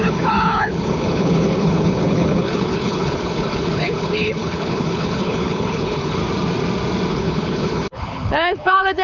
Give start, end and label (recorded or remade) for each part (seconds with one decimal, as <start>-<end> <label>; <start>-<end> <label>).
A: 0.0-6.2 remade; 6.2-7.1 recorded; 7.1-9.0 remade